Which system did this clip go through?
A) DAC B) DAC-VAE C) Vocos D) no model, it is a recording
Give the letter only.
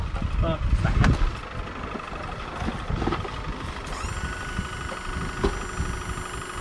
D